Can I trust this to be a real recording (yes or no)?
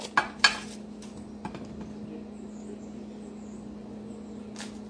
yes